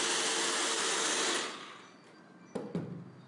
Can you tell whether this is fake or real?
real